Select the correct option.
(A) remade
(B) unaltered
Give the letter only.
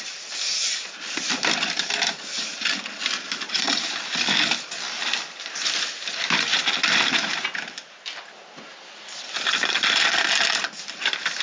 B